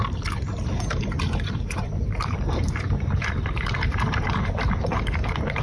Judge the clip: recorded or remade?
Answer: remade